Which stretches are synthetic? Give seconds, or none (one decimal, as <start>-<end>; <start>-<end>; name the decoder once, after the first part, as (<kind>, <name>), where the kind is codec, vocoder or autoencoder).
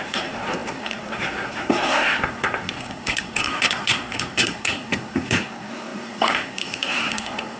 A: 0.0-7.6 (codec, SNAC)